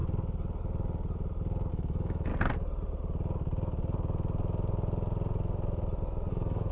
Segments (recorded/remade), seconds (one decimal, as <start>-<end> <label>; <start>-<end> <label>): 0.0-1.7 recorded; 1.7-2.3 remade; 2.3-6.3 recorded; 6.3-6.7 remade